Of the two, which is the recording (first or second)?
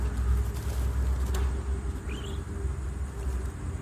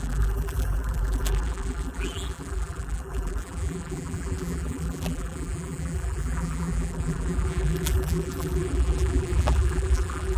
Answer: first